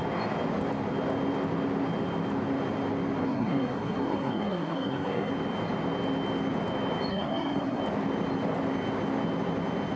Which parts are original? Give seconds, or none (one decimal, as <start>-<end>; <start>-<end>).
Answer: 0.0-3.2; 5.3-7.1; 7.8-10.0